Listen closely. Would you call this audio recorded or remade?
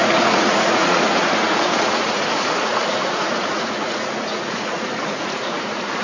remade